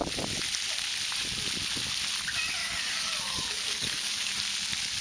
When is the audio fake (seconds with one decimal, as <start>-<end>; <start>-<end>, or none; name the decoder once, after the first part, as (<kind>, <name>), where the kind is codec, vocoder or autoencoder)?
2.6-4.3 (codec, DAC)